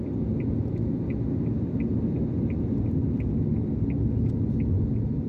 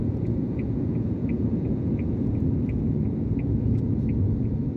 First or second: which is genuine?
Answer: first